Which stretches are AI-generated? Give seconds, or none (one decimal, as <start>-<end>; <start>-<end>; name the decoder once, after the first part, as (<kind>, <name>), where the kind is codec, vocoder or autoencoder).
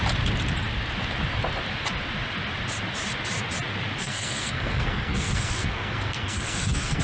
4.0-7.0 (codec, SNAC)